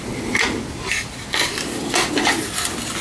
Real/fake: real